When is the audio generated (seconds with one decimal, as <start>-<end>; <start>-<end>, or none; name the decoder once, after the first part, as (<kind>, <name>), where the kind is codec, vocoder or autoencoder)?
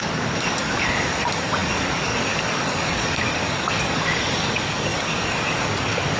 0.0-6.2 (codec, DAC)